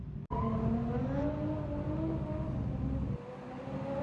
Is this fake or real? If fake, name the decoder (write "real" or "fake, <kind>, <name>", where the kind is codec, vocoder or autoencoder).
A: real